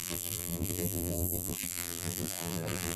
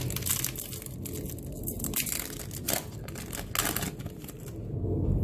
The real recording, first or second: second